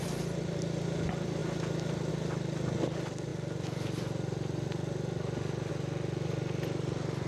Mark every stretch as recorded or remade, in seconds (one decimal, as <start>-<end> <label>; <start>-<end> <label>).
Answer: 0.0-7.3 recorded